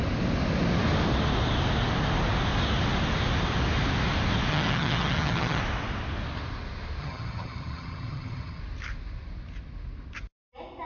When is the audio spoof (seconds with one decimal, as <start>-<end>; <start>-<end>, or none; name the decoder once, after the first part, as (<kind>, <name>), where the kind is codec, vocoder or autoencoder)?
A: 4.5-5.6 (vocoder, HiFi-GAN); 7.0-8.6